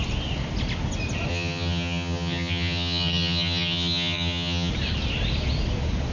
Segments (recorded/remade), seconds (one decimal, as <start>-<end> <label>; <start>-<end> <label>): 0.0-1.3 recorded; 1.3-4.7 remade; 4.7-6.1 recorded